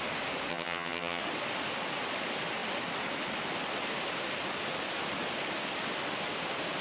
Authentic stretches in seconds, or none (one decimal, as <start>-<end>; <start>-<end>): 0.0-0.5; 1.2-6.8